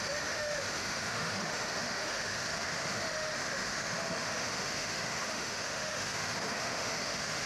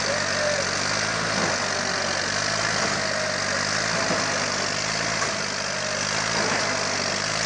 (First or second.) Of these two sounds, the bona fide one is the second